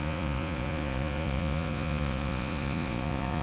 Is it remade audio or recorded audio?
remade